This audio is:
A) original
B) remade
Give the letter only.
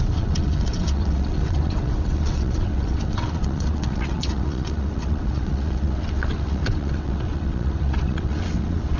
B